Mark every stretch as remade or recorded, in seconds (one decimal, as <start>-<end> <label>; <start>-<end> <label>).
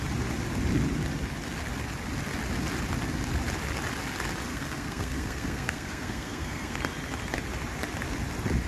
0.0-4.5 recorded; 4.5-6.8 remade; 6.8-8.7 recorded